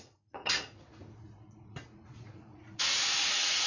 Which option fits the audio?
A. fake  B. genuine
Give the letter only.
A